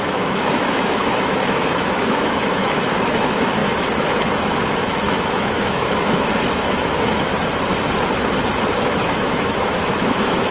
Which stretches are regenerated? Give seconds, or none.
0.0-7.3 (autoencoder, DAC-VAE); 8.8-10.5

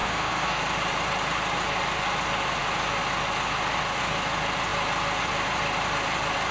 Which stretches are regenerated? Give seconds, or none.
0.0-0.6 (codec, SNAC)

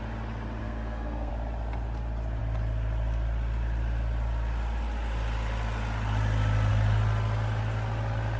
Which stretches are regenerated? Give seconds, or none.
0.6-1.3 (codec, SNAC)

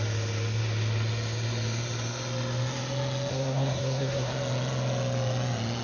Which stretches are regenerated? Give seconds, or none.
3.3-4.3 (codec, SNAC)